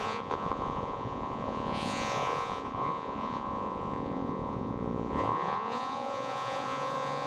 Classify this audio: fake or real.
fake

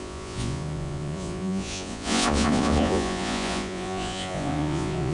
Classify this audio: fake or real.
fake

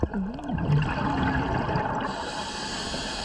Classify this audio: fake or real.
real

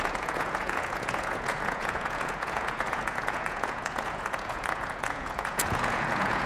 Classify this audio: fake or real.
fake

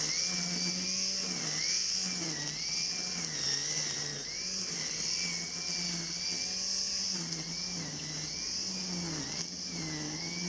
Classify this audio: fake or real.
real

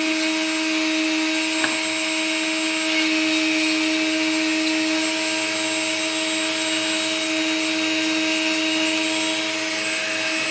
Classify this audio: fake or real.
real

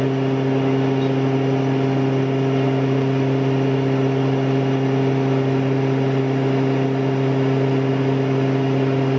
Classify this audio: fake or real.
real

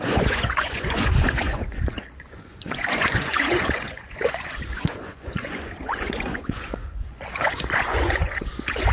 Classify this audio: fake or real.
fake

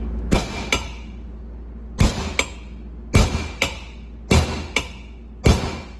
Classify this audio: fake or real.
real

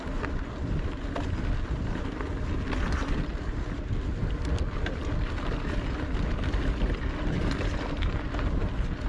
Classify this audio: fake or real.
real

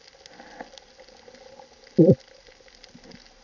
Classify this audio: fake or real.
real